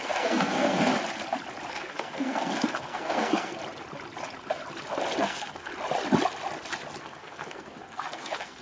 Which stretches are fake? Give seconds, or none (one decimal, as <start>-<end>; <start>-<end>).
0.0-0.9; 1.7-3.6; 5.2-5.7; 7.0-8.6